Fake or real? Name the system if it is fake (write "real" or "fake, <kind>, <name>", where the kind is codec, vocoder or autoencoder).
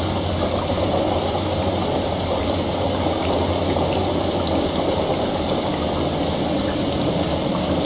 real